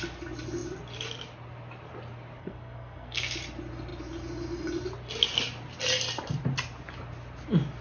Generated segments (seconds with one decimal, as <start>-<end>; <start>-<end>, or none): 2.4-3.2